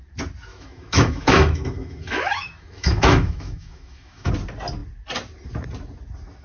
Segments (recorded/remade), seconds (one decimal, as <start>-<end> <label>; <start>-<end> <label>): 0.0-0.5 recorded; 0.5-4.3 remade; 4.3-6.4 recorded